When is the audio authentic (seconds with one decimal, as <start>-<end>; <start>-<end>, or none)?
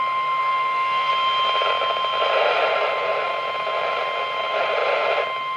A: 0.0-0.4; 1.1-5.6